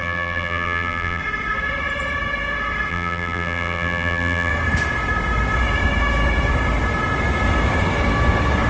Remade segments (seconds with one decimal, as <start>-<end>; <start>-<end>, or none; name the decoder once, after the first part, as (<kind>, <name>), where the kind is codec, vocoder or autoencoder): 0.0-1.2 (vocoder, BigVGAN v2); 2.9-4.5